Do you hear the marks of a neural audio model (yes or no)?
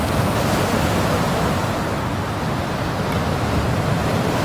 no